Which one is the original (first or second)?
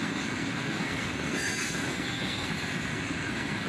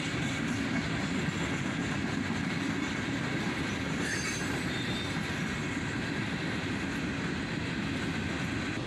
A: second